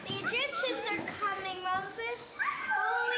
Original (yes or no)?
no